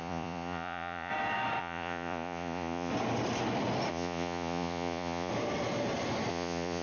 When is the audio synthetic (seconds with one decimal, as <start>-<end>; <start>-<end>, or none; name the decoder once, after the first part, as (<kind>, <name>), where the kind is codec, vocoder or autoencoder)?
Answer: 0.0-1.1 (vocoder, Vocos); 1.6-2.9; 3.9-5.3; 6.3-6.8

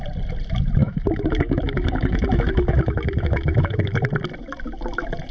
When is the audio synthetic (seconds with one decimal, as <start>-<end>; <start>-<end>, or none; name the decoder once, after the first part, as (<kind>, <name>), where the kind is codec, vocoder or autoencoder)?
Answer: 0.8-4.0 (autoencoder, DAC-VAE)

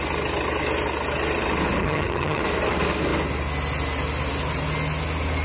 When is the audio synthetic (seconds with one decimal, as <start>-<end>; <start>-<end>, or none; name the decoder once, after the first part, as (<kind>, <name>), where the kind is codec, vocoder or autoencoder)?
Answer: 1.8-2.4 (vocoder, HiFi-GAN)

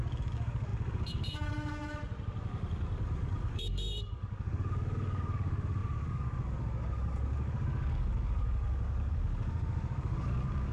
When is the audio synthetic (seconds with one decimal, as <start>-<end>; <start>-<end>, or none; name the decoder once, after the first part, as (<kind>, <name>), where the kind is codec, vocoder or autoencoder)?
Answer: 0.0-2.0 (codec, DAC); 3.0-10.7